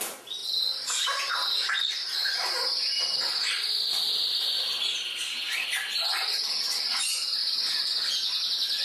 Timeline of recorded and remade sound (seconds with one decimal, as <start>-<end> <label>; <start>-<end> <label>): 0.0-8.8 recorded